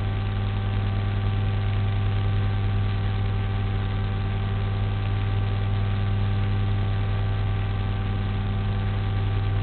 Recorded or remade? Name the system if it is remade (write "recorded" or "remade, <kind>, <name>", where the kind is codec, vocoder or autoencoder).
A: recorded